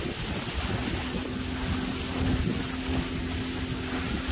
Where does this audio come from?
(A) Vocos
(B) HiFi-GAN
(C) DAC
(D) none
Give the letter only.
D